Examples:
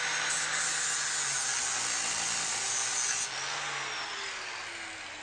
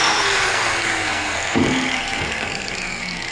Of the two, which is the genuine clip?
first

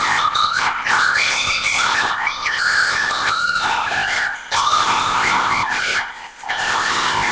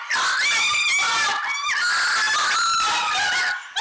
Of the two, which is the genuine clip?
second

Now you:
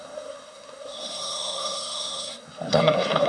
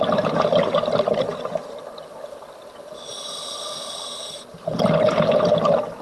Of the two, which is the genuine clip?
second